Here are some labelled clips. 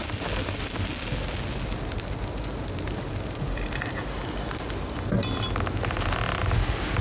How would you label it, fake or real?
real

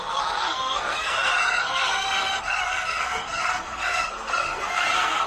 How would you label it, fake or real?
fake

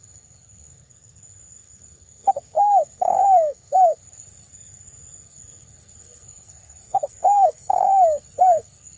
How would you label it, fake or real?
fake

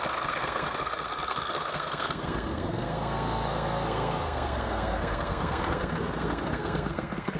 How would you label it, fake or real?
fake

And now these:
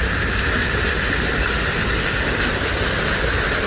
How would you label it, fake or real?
real